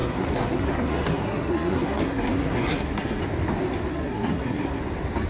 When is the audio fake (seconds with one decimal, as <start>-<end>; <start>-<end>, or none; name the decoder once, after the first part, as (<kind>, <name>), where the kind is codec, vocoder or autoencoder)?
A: 0.0-3.2 (codec, SNAC); 3.9-4.8